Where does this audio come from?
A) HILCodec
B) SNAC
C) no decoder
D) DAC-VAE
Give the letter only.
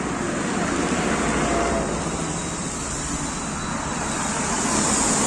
C